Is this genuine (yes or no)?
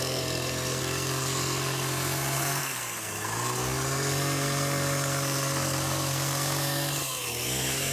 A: no